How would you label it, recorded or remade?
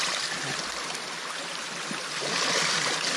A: recorded